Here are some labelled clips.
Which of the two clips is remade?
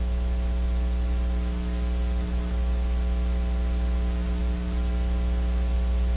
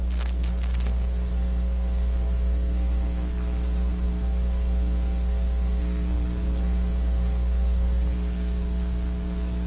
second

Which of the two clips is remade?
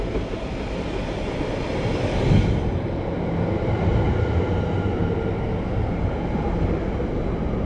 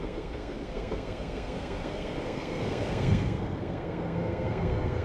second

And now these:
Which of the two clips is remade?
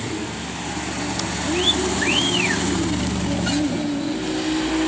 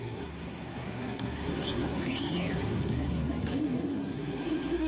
second